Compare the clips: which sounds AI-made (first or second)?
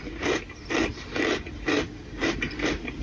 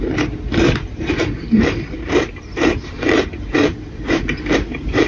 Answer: second